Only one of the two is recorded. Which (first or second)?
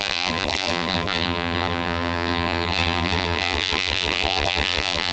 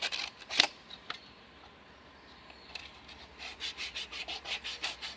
second